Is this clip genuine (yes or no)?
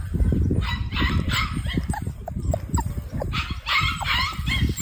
no